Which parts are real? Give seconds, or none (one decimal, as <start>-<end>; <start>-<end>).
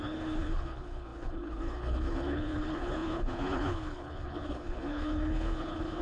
none